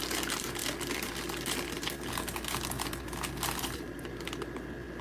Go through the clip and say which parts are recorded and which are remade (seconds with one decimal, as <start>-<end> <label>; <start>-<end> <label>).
0.0-5.0 recorded